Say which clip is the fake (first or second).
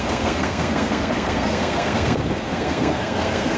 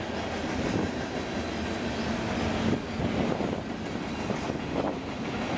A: first